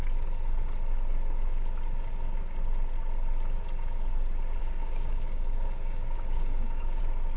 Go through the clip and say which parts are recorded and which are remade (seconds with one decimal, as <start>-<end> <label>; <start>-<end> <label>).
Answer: 0.0-4.6 recorded; 4.6-7.0 remade; 7.0-7.4 recorded